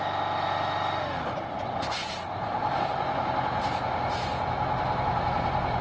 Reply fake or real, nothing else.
real